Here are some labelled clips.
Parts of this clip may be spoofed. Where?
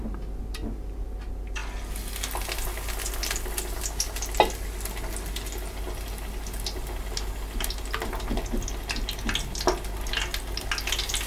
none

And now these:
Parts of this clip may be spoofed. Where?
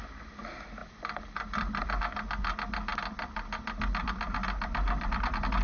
0.8-2.0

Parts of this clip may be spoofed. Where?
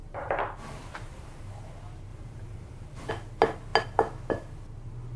0.0-1.4; 2.1-3.1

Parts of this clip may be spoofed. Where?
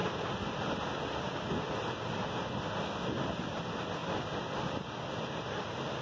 4.0-6.0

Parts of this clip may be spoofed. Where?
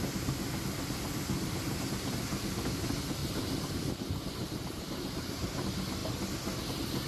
3.2-5.6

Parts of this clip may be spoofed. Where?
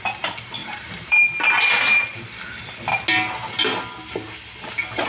0.6-2.2